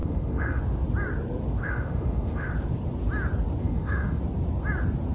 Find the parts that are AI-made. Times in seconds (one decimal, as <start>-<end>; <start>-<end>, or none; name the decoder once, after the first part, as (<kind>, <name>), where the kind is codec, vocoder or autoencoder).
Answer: 0.0-0.6 (autoencoder, DAC-VAE); 1.6-2.5; 3.6-4.2